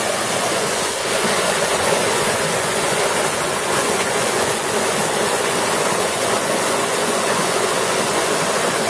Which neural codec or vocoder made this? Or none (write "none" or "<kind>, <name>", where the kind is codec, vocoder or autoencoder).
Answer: vocoder, Vocos